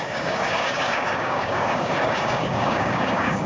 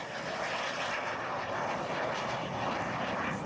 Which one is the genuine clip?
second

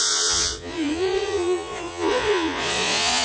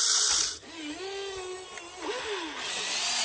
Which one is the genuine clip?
second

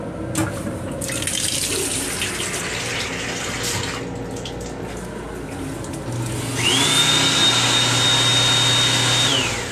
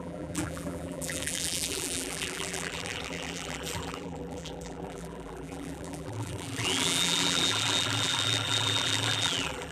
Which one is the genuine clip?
first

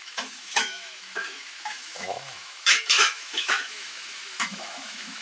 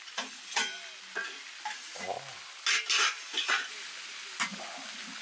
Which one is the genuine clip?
second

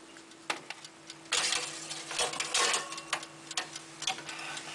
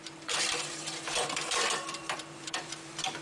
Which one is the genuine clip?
first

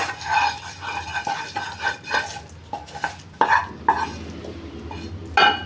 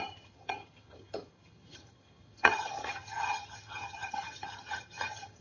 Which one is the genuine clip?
first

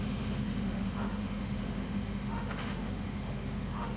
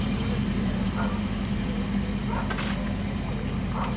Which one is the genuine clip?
second